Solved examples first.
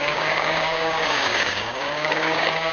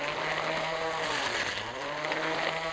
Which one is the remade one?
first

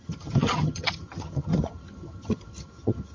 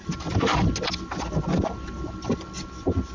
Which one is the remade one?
first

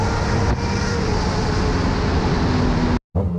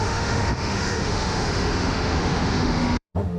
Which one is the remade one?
second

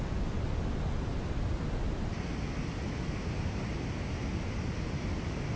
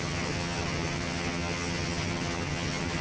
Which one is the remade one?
second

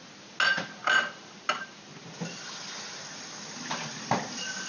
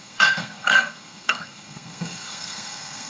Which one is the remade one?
second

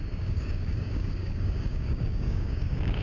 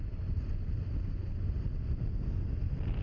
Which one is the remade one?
first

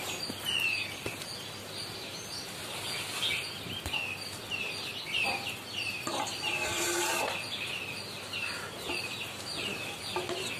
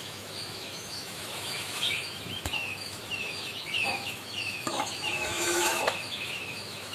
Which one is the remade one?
second